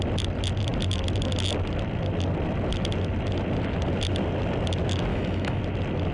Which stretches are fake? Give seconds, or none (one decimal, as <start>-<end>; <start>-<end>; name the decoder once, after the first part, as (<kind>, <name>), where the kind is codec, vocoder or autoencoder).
5.1-5.6 (autoencoder, DAC-VAE)